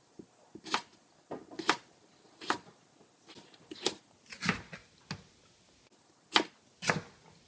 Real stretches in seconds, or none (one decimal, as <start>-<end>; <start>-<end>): 0.0-7.5